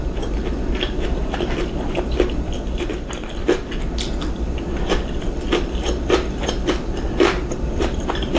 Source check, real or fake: fake